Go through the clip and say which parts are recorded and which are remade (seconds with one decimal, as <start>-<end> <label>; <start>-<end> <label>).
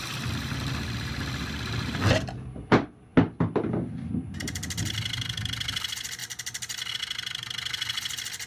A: 0.0-8.5 recorded